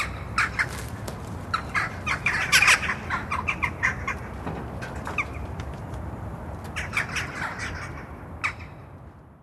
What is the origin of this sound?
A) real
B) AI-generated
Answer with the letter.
A